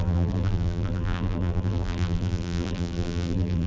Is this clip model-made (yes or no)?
yes